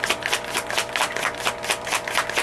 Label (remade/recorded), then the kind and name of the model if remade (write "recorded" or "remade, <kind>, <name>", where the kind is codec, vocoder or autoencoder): recorded